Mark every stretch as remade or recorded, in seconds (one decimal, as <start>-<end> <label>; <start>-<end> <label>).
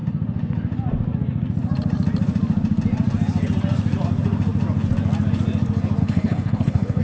0.0-6.0 recorded; 6.0-7.0 remade